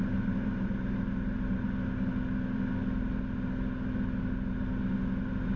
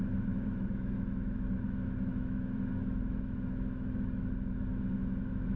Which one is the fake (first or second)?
second